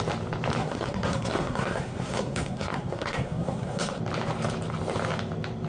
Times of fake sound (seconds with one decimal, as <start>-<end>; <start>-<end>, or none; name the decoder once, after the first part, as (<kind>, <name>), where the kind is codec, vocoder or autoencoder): 0.6-4.0 (codec, SNAC)